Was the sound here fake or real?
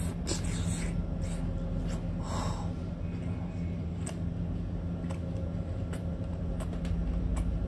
real